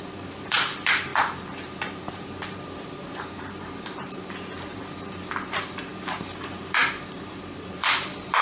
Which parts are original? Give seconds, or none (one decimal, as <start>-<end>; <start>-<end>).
none